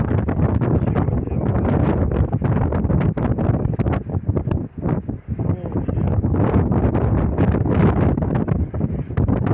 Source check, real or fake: real